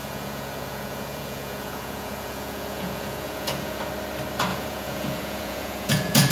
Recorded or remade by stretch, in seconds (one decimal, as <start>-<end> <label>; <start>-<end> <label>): 0.0-3.8 remade; 3.8-4.5 recorded; 4.5-6.3 remade